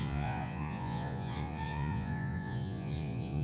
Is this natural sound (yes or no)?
no